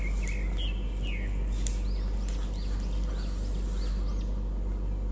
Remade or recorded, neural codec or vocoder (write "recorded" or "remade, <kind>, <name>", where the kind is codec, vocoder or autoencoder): recorded